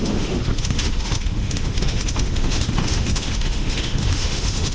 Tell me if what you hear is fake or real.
fake